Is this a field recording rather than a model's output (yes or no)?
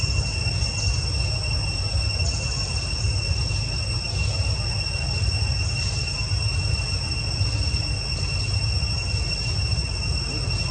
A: yes